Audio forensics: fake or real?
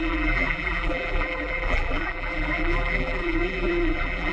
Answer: fake